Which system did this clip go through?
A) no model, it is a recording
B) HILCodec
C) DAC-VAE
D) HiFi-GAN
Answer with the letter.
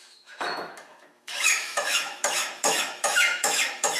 C